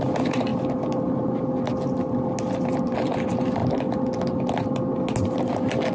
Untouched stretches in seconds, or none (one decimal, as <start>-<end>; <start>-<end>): 0.0-5.9

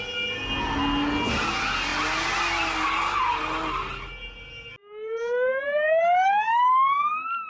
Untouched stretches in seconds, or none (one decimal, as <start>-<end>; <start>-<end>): 0.0-7.5